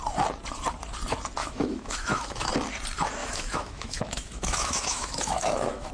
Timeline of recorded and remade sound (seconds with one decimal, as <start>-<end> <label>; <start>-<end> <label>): 0.0-1.4 recorded; 1.4-2.5 remade; 2.5-3.2 recorded; 3.2-5.9 remade